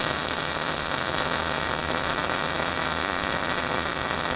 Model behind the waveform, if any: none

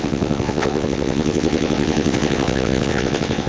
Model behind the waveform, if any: vocoder, WaveNeXt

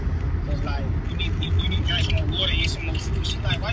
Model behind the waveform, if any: none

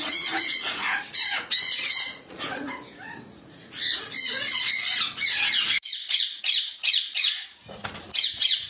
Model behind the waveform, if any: vocoder, Vocos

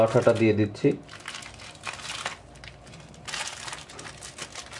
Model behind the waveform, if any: none